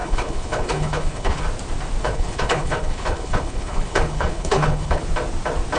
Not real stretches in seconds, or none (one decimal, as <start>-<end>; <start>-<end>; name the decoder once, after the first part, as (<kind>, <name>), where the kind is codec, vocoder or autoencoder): 0.0-1.4 (codec, HILCodec); 2.0-5.0